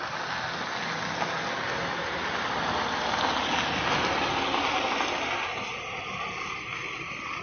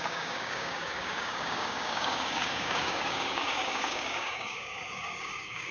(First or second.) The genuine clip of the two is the first